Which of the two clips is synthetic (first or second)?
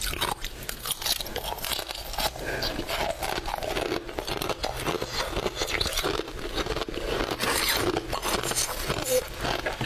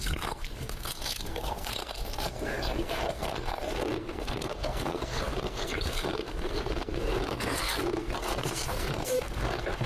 second